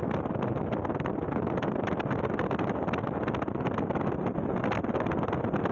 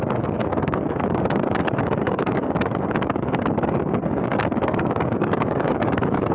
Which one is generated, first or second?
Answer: second